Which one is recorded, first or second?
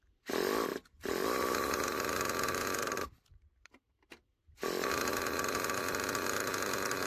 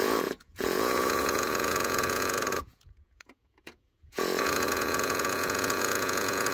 first